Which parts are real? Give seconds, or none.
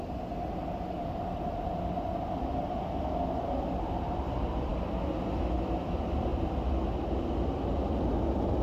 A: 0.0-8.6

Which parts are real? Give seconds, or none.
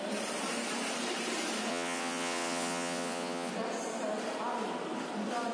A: 0.0-1.7; 3.5-5.5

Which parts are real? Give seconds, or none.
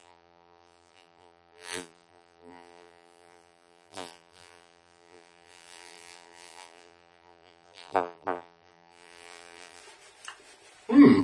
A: 9.8-11.2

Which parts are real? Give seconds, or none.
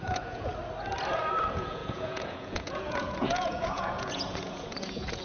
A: 0.5-1.4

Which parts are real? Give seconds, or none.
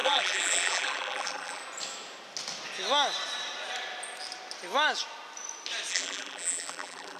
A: 1.6-5.9